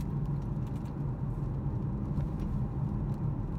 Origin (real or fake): real